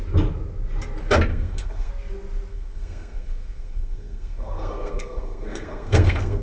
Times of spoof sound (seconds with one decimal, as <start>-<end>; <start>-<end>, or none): 1.3-1.9; 2.5-6.4